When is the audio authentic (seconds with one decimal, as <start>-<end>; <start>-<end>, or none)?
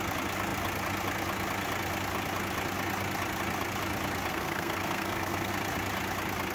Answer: 0.0-4.3; 5.5-6.5